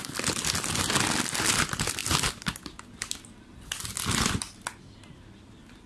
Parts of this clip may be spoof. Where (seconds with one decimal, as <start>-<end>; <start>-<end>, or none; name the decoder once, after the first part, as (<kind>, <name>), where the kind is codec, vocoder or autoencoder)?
none